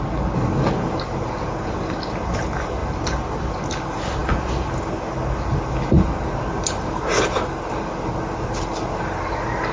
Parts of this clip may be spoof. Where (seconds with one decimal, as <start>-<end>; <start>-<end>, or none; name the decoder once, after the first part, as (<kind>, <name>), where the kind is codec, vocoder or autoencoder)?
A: none